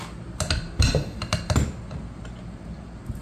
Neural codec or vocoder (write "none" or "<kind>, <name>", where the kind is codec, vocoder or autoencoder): none